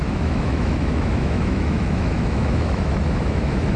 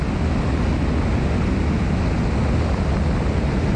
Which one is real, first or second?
second